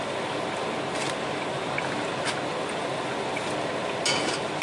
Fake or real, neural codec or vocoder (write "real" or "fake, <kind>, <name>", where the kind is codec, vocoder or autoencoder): real